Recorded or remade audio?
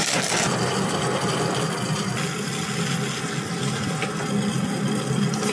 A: recorded